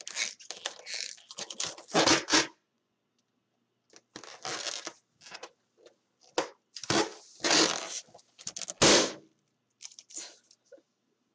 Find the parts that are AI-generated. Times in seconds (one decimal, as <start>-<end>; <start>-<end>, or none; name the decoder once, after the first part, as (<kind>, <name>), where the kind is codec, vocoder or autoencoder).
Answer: 2.1-3.0 (vocoder, Vocos)